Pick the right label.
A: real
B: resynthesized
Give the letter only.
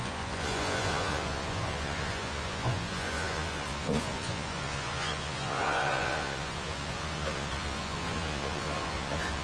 B